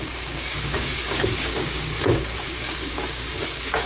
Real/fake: fake